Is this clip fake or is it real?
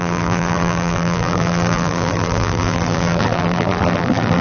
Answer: fake